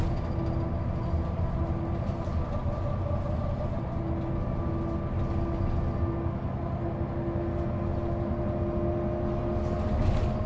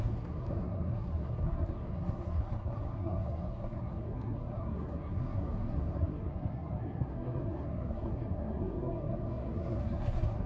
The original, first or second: first